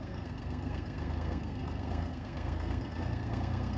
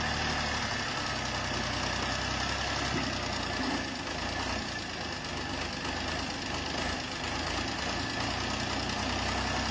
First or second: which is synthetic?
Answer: first